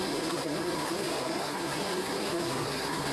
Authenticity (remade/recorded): remade